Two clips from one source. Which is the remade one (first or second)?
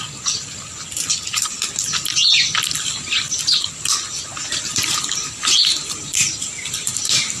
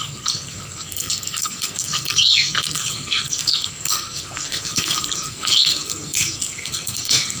second